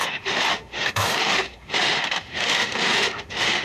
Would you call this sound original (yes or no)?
no